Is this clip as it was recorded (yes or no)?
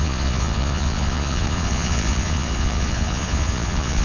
no